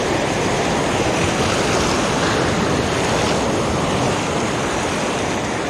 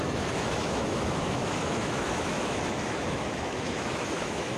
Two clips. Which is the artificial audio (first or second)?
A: second